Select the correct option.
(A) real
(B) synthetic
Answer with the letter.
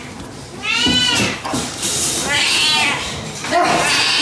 A